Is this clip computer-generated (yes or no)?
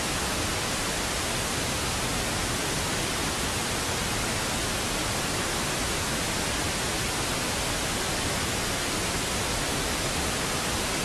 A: no